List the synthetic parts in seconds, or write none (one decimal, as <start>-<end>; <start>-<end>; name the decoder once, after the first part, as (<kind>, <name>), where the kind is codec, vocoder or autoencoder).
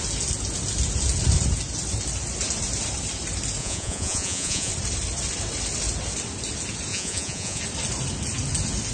3.6-4.7 (vocoder, Vocos); 6.9-7.6